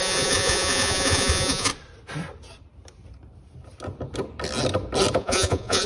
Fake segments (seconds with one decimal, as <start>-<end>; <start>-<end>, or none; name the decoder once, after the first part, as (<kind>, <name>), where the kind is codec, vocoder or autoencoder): 0.0-1.7 (vocoder, Vocos); 5.2-5.9